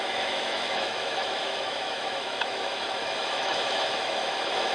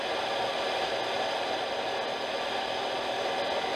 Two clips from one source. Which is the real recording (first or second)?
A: second